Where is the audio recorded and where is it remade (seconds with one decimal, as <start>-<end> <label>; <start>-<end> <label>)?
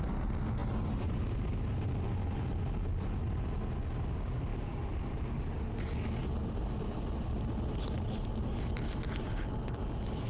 0.0-0.6 recorded; 0.6-1.2 remade; 1.2-4.5 recorded; 4.5-5.4 remade; 5.4-6.2 recorded; 6.2-6.8 remade; 6.8-8.3 recorded; 8.3-8.8 remade; 8.8-10.3 recorded